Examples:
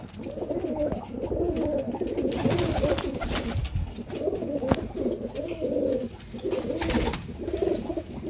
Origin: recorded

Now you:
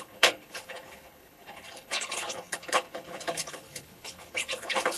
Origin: remade